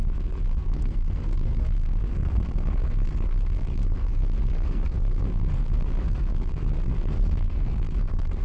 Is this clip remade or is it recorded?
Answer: remade